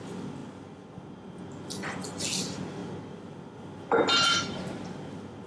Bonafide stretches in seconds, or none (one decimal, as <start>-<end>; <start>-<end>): 0.0-5.5